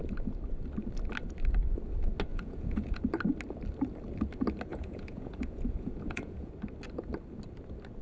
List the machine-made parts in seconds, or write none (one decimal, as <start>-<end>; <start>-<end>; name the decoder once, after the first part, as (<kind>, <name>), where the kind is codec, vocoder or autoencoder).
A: 2.3-3.0 (vocoder, Vocos); 4.7-6.5